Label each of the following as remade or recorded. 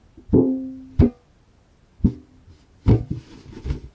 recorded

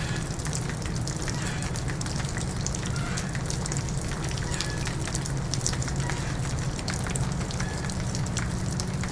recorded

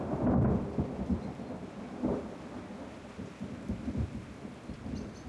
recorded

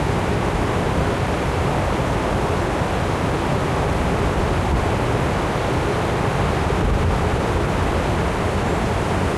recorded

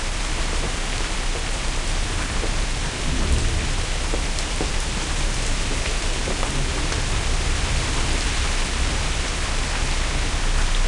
remade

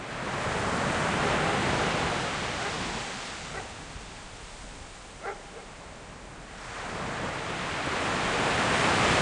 recorded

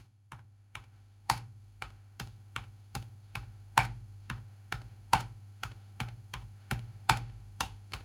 remade